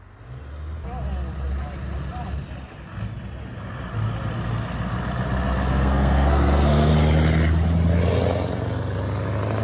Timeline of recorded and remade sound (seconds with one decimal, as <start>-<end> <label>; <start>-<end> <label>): 0.0-5.7 recorded; 5.7-6.9 remade; 6.9-9.6 recorded